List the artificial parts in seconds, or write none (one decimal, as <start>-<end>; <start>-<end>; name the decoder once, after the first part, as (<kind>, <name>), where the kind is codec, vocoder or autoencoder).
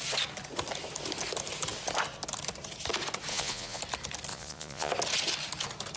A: 3.3-3.8 (vocoder, Vocos); 4.3-4.9